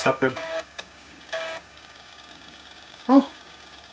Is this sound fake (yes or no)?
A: yes